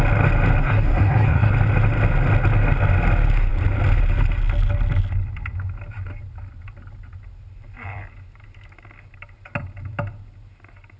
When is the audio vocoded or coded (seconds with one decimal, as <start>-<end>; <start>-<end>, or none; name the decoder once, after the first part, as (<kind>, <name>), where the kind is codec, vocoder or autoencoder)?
0.6-1.5 (codec, SNAC)